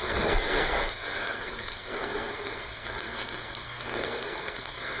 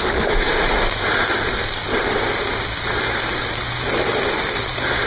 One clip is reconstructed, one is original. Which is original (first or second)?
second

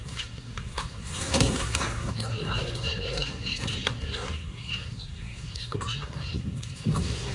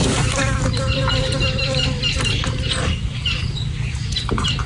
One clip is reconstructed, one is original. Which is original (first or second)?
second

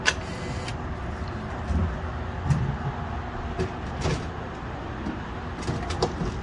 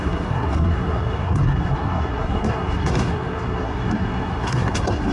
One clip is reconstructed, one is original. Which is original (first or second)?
first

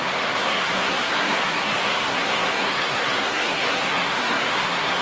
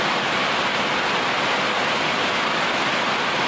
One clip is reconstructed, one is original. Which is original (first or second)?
second